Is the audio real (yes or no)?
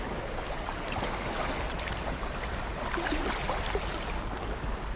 yes